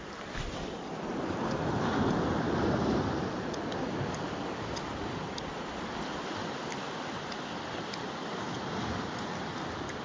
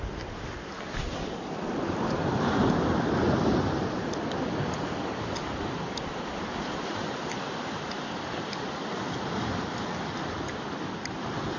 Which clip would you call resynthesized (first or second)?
second